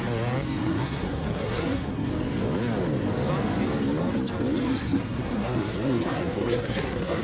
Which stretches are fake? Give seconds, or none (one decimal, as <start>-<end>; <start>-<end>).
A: 0.6-2.1; 4.6-7.2